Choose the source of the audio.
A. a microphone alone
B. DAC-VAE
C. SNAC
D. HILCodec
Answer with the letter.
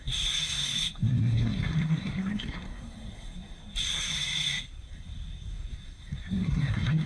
C